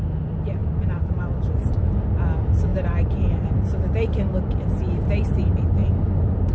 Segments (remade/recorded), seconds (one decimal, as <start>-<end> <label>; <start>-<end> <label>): 0.0-0.6 recorded; 0.6-1.9 remade; 1.9-2.7 recorded; 2.7-3.6 remade; 3.6-6.5 recorded